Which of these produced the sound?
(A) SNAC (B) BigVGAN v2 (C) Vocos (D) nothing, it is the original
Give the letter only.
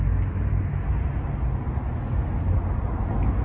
D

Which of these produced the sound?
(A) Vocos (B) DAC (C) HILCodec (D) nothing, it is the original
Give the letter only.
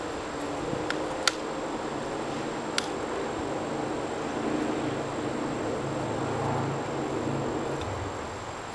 D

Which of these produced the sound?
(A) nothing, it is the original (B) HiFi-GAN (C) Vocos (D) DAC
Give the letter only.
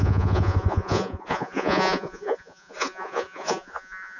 C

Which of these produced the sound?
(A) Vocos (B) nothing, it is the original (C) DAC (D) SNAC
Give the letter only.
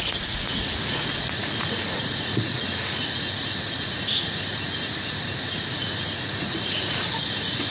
A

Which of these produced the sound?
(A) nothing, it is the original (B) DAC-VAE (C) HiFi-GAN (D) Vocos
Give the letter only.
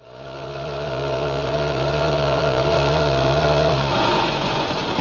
D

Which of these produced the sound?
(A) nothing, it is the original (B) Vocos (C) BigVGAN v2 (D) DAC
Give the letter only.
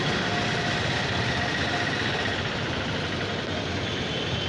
A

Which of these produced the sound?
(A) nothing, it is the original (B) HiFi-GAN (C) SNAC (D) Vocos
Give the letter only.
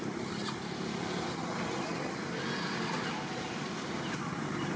A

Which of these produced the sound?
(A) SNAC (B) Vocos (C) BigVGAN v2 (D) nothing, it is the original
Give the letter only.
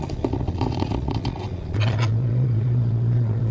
B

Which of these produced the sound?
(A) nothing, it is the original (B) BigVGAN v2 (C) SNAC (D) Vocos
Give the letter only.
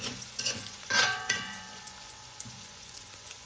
D